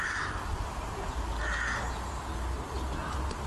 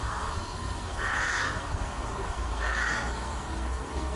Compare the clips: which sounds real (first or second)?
first